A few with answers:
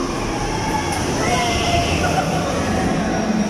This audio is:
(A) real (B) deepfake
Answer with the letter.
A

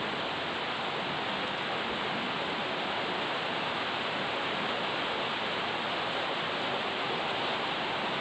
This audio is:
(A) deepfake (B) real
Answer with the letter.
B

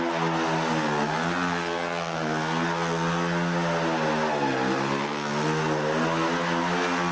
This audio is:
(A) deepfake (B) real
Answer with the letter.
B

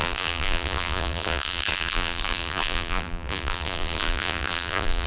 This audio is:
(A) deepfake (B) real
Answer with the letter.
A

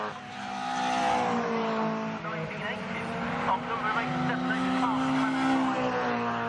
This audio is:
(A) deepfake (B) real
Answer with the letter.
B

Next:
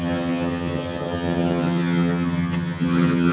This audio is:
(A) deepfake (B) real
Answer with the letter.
A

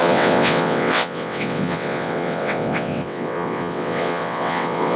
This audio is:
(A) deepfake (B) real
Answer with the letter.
A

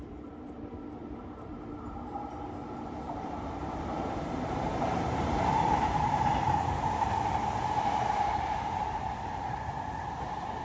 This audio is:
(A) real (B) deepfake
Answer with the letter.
B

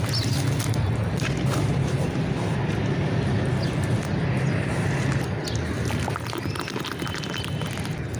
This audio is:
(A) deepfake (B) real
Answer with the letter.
B